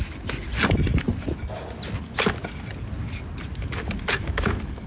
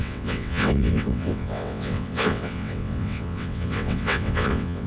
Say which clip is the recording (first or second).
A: first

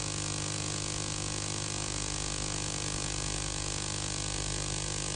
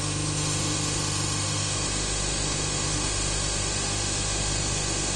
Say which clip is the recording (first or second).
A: first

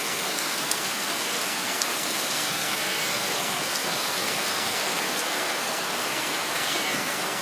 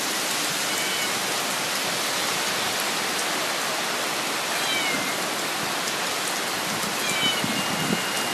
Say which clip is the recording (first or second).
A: second